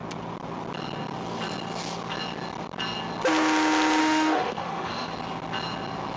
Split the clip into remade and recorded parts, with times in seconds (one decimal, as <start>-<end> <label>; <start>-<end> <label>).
0.0-4.0 recorded; 4.0-5.1 remade; 5.1-6.2 recorded